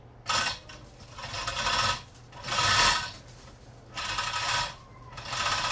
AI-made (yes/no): no